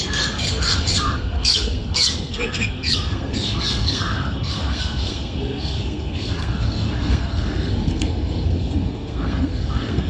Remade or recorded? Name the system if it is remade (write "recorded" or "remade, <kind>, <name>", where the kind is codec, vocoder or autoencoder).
remade, codec, SNAC